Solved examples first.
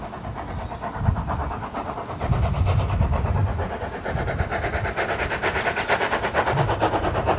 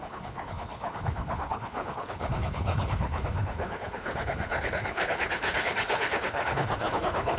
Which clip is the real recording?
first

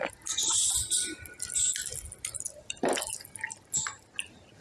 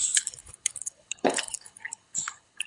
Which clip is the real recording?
first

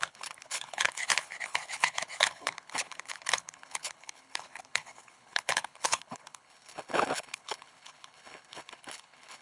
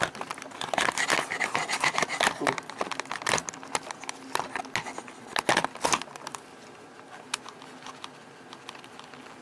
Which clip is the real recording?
second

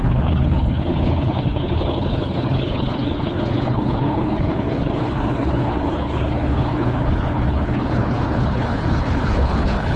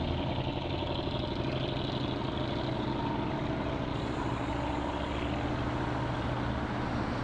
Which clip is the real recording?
second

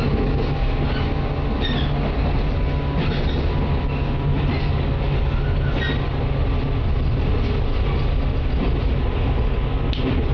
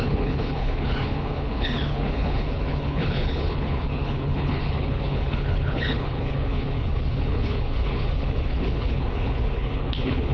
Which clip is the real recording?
first